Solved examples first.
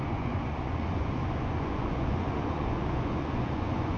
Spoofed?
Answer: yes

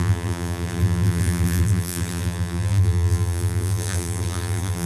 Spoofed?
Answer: yes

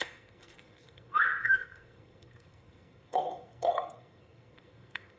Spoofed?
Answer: yes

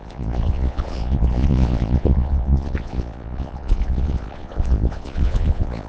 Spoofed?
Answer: yes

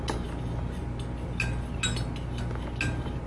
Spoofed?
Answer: no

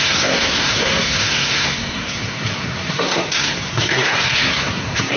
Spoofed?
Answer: yes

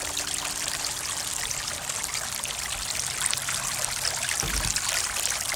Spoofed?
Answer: no